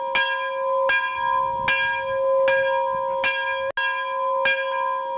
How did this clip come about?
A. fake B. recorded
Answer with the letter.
B